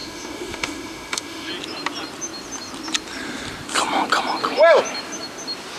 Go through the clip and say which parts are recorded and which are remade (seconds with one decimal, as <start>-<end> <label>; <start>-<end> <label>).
0.0-1.5 remade; 1.5-5.8 recorded